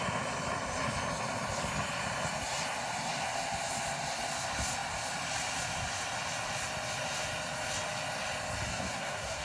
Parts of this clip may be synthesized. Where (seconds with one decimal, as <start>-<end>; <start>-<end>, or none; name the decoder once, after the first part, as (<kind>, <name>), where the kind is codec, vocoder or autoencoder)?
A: 8.7-9.4 (codec, SNAC)